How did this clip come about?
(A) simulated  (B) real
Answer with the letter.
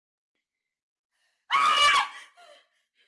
B